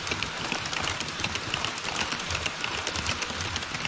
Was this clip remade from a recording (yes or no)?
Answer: yes